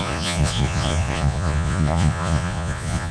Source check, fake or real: fake